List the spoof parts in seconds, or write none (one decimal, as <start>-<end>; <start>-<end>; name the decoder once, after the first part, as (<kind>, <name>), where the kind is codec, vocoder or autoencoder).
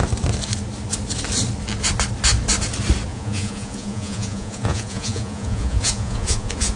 3.1-6.8 (vocoder, Vocos)